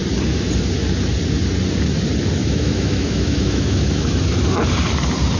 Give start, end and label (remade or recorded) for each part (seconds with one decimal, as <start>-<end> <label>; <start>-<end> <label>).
0.0-2.4 recorded; 2.4-4.2 remade; 4.2-5.4 recorded